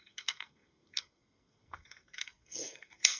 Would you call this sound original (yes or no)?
no